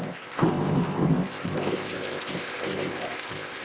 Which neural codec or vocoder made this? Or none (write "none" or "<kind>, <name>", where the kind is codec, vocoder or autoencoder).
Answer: codec, ZipCodec